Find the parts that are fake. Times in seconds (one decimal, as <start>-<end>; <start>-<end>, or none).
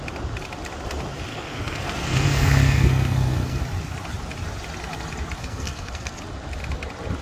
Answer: 1.3-3.6; 5.4-6.2